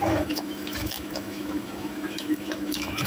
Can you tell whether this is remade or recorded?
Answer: remade